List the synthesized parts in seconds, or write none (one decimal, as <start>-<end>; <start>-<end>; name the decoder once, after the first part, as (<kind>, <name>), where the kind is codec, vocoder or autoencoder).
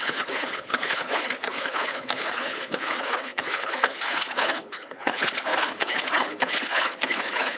0.0-7.6 (codec, HILCodec)